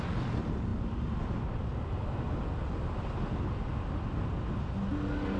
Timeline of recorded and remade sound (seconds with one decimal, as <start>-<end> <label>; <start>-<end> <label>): 0.0-5.4 recorded